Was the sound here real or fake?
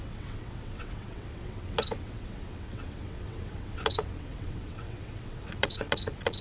fake